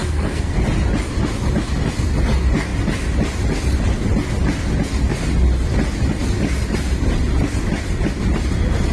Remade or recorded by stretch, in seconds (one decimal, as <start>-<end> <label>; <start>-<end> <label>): 0.0-0.6 remade; 0.6-8.9 recorded